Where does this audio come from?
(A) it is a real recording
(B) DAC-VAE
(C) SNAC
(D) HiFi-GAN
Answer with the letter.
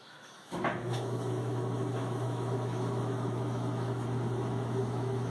B